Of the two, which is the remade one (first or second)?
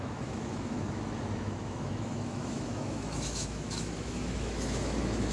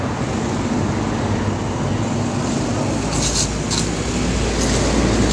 first